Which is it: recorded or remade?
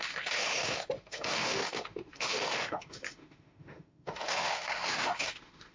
remade